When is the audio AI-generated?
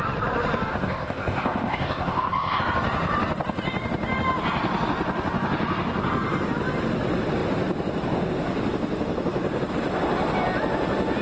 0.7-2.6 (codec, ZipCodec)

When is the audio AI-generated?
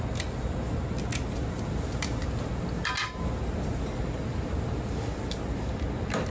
none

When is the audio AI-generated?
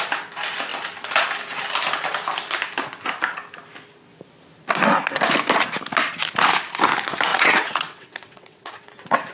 7.3-9.3 (vocoder, WaveNeXt)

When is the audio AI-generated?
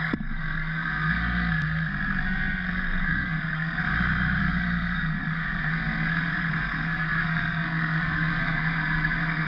0.0-3.9 (codec, SNAC); 4.4-9.5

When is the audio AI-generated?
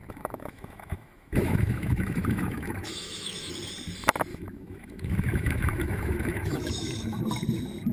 0.0-3.5 (autoencoder, DAC-VAE); 4.3-7.2